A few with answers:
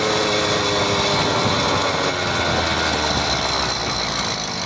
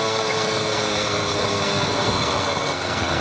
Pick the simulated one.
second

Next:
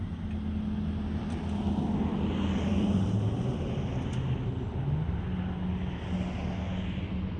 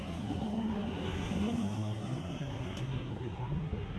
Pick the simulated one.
second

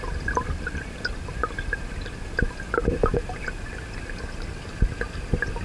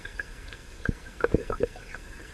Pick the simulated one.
second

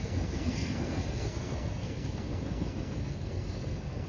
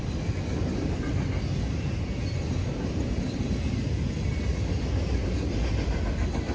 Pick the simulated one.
first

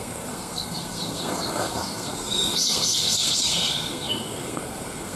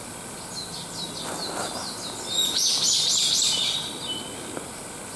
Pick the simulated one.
first